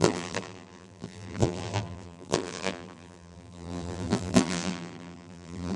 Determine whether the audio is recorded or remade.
remade